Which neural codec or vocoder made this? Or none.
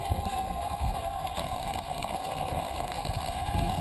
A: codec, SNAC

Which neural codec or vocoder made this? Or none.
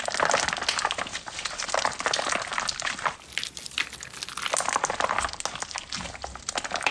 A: none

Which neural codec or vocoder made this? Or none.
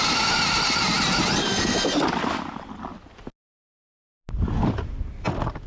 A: none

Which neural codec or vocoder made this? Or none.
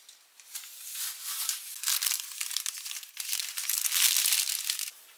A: none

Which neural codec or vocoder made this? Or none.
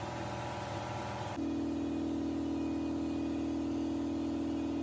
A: none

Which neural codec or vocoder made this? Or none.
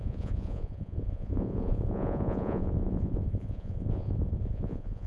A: vocoder, Vocos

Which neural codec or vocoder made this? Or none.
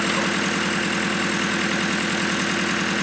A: none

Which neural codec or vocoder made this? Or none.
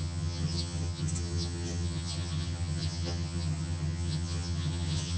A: vocoder, HiFi-GAN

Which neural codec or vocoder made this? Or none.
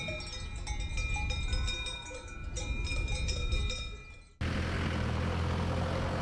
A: none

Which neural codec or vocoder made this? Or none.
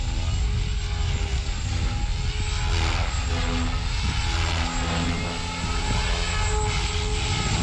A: none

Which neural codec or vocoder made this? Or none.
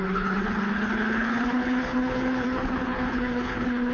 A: codec, HILCodec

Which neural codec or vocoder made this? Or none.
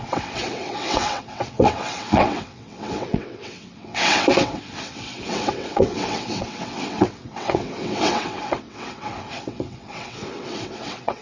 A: vocoder, WaveNeXt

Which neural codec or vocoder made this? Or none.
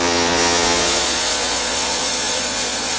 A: vocoder, Vocos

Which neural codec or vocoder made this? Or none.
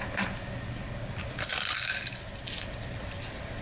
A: none